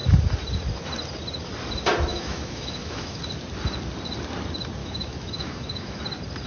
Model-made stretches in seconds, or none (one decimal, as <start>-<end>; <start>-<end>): 2.1-3.2; 4.8-6.0